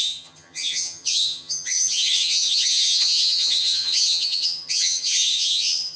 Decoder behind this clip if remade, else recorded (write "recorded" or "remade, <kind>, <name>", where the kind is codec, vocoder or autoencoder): remade, vocoder, HiFi-GAN